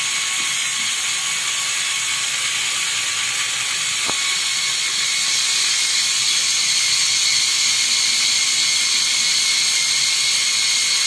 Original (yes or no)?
yes